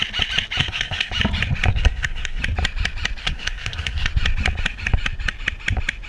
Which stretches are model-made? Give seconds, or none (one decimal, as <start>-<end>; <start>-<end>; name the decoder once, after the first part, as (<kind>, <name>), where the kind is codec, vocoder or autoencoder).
0.6-1.1 (codec, SNAC); 1.7-2.4; 3.2-4.1